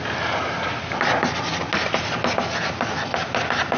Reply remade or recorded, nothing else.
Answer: recorded